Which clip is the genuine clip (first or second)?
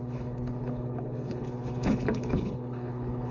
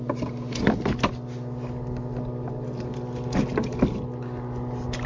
second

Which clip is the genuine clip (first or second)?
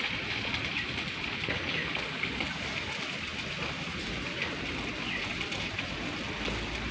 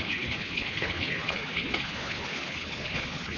first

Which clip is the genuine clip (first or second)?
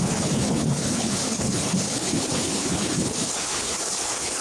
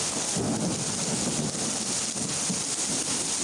second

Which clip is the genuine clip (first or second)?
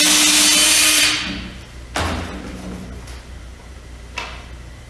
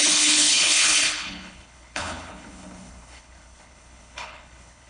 first